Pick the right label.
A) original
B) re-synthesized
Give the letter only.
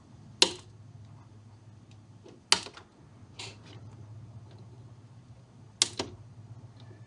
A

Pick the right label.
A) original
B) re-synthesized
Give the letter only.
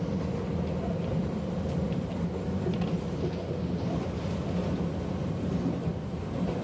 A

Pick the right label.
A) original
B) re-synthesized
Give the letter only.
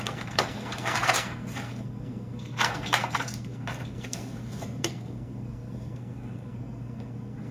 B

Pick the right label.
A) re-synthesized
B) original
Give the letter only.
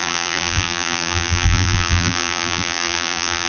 A